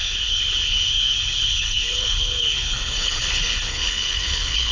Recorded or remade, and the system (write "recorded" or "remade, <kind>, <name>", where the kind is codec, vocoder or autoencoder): remade, codec, HILCodec